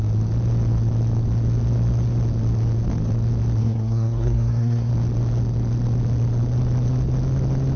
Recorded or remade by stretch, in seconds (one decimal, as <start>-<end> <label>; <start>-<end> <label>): 0.0-3.6 recorded; 3.6-4.9 remade; 4.9-7.8 recorded

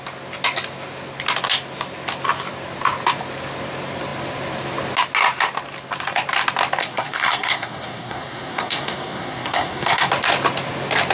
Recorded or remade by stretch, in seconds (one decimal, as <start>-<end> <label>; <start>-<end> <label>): 0.0-6.8 recorded; 6.8-10.1 remade; 10.1-11.1 recorded

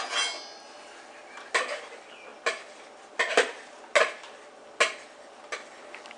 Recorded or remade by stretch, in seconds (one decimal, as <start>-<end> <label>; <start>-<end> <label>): 0.0-6.2 recorded

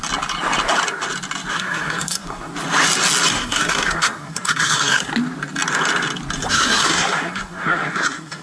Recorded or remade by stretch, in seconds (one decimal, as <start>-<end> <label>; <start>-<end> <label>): 0.0-1.5 recorded; 1.5-2.5 remade; 2.5-3.3 recorded; 3.3-5.1 remade; 5.1-6.5 recorded; 6.5-8.4 remade